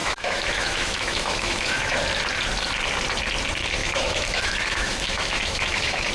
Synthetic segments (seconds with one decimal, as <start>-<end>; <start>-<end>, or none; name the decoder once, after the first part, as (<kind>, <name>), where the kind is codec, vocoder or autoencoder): 0.0-2.0 (autoencoder, DAC-VAE); 3.8-6.1

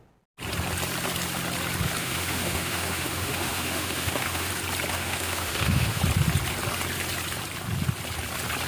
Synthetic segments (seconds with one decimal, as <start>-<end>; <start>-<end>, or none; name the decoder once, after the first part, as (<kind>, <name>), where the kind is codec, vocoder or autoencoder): 2.0-4.5 (autoencoder, DAC-VAE); 4.9-6.0

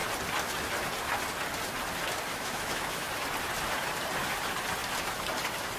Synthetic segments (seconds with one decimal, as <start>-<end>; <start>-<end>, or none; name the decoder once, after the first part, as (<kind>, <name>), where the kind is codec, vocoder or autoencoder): 2.3-3.1 (autoencoder, DAC-VAE)

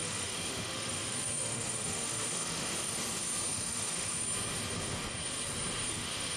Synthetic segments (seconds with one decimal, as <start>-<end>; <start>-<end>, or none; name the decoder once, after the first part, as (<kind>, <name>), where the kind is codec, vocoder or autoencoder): 0.0-3.0 (autoencoder, DAC-VAE); 3.5-4.2; 5.9-6.4